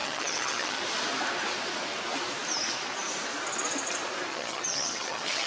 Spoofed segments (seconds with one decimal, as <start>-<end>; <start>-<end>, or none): 0.0-0.8; 4.3-5.5